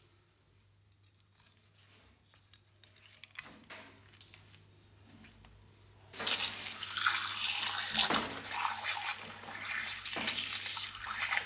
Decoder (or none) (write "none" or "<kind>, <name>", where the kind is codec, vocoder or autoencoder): none